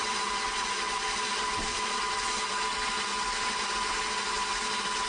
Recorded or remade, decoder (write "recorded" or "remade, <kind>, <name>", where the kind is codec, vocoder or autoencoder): recorded